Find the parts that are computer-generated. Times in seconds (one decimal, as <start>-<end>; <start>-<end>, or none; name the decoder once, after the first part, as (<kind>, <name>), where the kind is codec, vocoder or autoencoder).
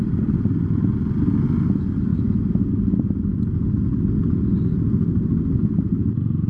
none